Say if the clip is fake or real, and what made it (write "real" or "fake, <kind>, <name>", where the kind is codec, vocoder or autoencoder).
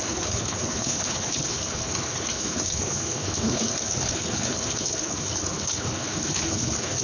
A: fake, codec, HILCodec